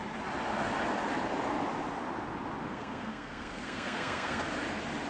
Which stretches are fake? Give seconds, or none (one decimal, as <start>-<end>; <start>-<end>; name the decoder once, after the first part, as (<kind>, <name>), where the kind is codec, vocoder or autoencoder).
2.7-4.4 (codec, SNAC)